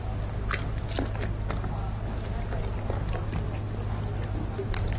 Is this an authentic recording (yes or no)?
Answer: yes